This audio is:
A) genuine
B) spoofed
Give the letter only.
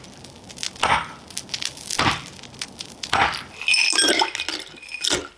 A